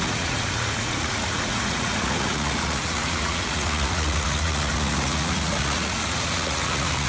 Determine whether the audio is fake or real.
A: fake